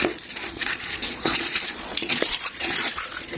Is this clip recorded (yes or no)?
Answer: no